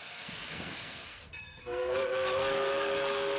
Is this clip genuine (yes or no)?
no